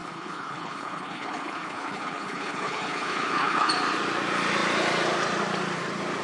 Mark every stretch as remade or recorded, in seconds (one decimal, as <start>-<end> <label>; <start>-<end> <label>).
0.0-3.7 remade; 3.7-6.2 recorded

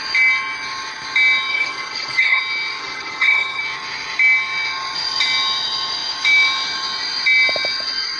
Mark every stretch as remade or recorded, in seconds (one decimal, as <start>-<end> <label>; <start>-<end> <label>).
0.0-1.5 recorded; 1.5-2.4 remade; 2.4-2.8 recorded; 2.8-3.6 remade; 3.6-8.2 recorded

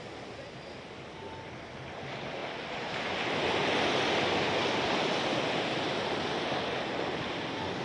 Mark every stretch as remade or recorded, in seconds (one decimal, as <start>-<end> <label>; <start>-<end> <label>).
0.0-7.8 recorded